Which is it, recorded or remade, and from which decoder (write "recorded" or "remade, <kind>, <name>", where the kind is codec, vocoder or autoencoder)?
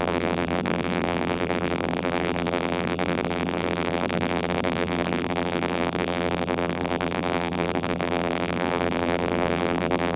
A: remade, vocoder, BigVGAN v2